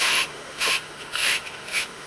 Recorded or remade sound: remade